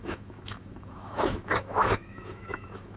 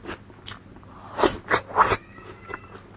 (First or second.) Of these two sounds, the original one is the second